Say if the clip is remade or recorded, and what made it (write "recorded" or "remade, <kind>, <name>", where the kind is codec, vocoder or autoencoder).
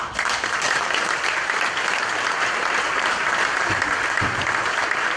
recorded